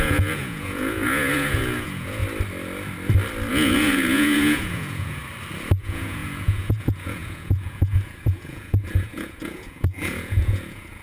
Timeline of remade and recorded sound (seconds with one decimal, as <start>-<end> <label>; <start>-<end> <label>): 0.0-2.2 remade; 2.2-3.5 recorded; 3.5-5.2 remade; 5.2-5.8 recorded; 5.8-11.0 remade